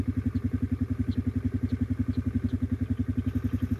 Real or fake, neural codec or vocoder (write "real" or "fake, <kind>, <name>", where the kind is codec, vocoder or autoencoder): real